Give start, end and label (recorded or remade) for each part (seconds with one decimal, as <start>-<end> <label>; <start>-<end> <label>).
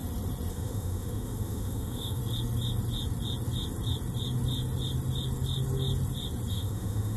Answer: 0.0-0.5 recorded; 0.5-2.2 remade; 2.2-6.5 recorded; 6.5-7.2 remade